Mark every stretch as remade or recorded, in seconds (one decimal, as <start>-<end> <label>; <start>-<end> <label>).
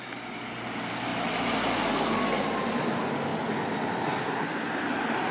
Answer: 0.0-5.3 recorded